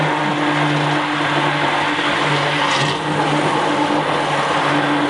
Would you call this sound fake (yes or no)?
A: no